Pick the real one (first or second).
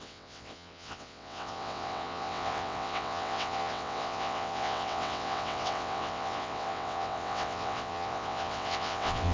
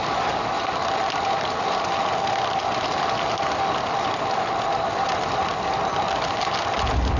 second